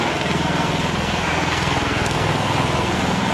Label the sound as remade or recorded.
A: remade